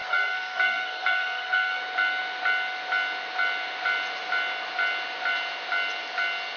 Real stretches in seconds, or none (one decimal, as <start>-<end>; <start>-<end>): 1.8-6.6